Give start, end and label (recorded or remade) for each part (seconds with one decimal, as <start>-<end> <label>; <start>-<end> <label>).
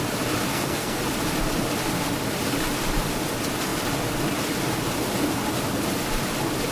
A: 0.0-0.5 recorded; 0.5-1.0 remade; 1.0-6.7 recorded